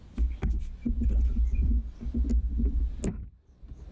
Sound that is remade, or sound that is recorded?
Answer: recorded